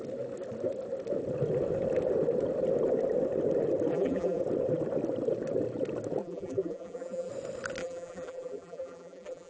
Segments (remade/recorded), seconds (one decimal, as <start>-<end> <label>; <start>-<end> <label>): 0.0-3.9 recorded; 3.9-4.4 remade; 4.4-6.2 recorded; 6.2-7.3 remade; 7.3-7.8 recorded; 7.8-9.5 remade